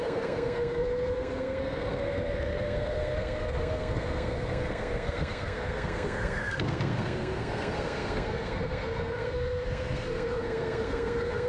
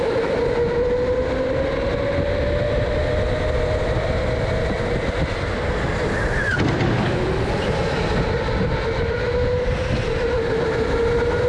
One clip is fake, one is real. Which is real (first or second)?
second